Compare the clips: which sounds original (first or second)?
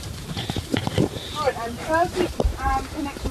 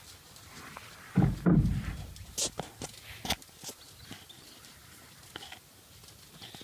second